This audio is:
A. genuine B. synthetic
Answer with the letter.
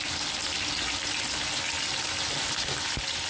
A